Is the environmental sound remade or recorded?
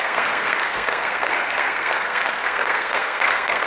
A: remade